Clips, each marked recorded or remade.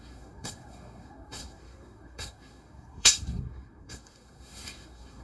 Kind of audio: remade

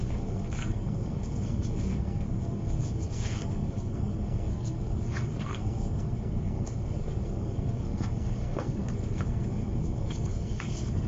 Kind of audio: remade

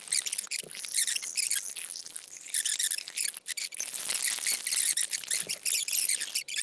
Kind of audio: recorded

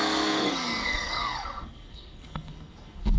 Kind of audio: remade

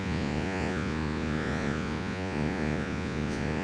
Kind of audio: remade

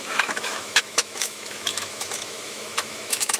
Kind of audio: remade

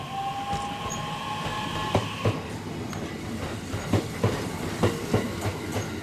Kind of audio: recorded